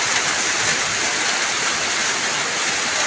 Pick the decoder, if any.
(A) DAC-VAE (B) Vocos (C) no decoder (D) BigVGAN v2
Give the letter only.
C